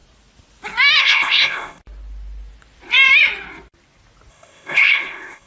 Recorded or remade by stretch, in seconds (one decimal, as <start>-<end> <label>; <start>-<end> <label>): 0.0-1.0 recorded; 1.0-1.8 remade; 1.8-4.3 recorded; 4.3-5.5 remade